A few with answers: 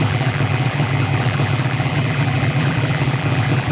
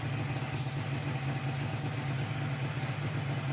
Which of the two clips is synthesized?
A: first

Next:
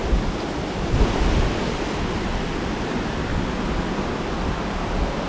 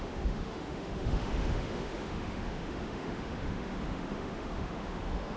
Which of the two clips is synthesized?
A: second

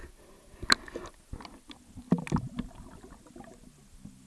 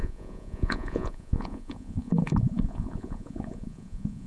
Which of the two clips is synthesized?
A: second